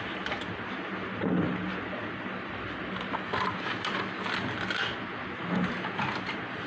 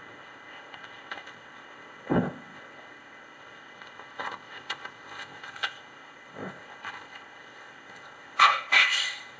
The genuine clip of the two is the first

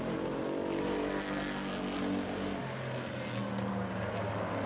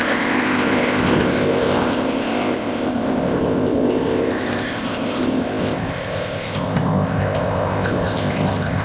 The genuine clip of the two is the first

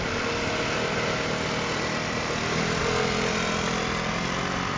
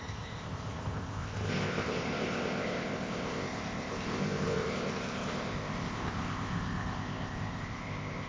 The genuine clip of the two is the first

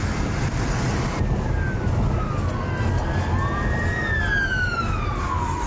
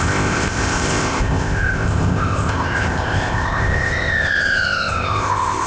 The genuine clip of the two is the first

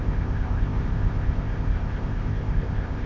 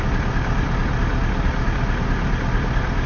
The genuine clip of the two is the second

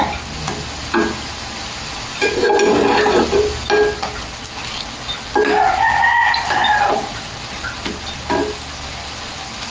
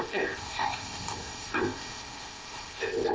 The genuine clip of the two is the first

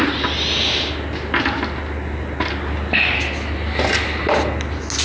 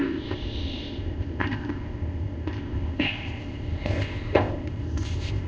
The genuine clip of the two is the first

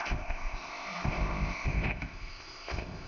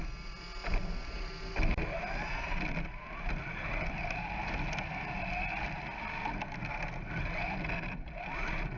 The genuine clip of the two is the second